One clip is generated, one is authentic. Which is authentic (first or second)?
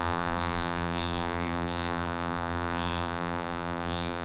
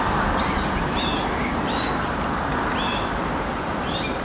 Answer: second